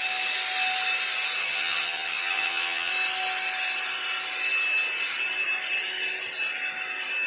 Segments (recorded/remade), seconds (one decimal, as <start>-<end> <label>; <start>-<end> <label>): 0.0-1.4 recorded; 1.4-2.9 remade; 2.9-7.3 recorded